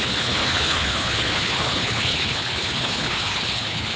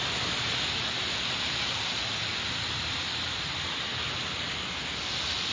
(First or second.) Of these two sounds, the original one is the second